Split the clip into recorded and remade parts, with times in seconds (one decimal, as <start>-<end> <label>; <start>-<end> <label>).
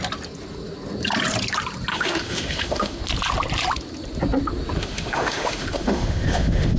0.0-1.9 recorded; 1.9-3.0 remade; 3.0-4.8 recorded; 4.8-6.8 remade